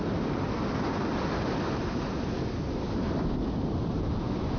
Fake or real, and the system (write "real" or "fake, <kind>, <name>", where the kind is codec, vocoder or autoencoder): real